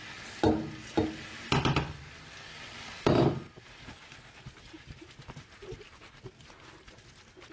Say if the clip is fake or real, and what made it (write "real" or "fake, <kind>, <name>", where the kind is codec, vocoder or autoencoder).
real